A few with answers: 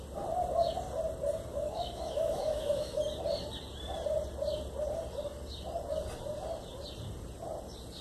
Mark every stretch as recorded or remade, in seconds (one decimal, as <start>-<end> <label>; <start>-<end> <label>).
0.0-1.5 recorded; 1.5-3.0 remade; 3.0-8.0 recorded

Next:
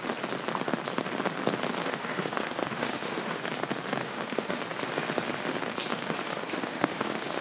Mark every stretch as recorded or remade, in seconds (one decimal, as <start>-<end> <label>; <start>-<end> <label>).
0.0-1.8 recorded; 1.8-3.4 remade; 3.4-4.0 recorded; 4.0-4.6 remade; 4.6-5.9 recorded; 5.9-7.4 remade

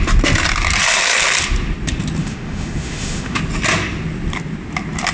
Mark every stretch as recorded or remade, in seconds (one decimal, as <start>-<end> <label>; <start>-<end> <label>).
0.0-2.2 recorded; 2.2-3.4 remade; 3.4-5.1 recorded